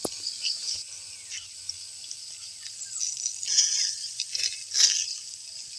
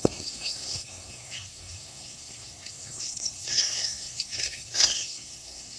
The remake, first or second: second